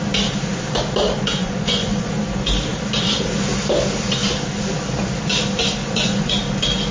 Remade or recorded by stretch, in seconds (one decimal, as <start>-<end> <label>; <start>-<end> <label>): 0.0-1.4 recorded; 1.4-2.1 remade; 2.1-5.8 recorded; 5.8-6.3 remade; 6.3-6.9 recorded